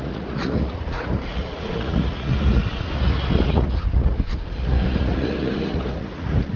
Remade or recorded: remade